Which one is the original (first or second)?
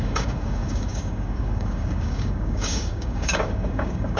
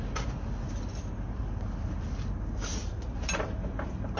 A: second